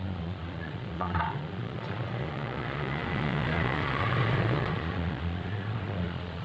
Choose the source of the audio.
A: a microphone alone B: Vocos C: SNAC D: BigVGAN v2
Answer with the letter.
B